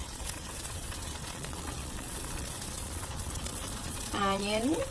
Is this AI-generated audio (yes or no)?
yes